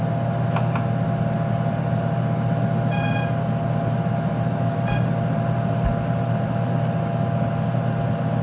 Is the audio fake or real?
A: real